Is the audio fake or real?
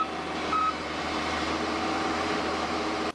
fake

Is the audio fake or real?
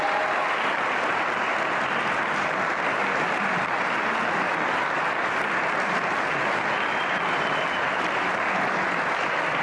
real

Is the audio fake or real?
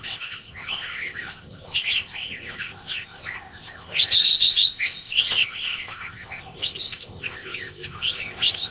fake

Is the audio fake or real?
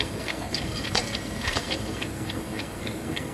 fake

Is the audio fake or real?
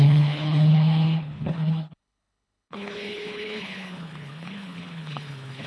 fake